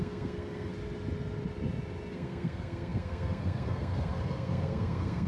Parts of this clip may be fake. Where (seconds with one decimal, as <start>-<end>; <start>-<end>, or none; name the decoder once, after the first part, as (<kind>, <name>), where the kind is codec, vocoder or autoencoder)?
0.0-0.7 (codec, SNAC); 2.1-5.3